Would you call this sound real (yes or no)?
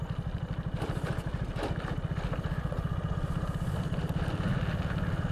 yes